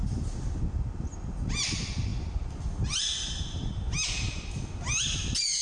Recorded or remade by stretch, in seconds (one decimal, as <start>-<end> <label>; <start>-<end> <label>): 0.0-5.6 recorded